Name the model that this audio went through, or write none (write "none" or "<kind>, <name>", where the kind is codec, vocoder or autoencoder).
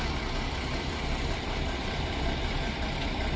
none